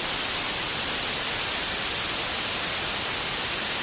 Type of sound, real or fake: real